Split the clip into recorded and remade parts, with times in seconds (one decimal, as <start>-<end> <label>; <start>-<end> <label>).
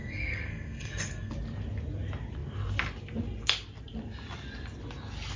0.0-1.3 remade; 1.3-5.4 recorded